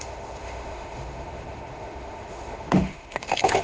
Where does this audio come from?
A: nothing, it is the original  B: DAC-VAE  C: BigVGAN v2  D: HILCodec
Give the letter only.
B